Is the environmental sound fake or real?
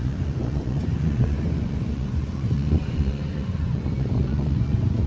fake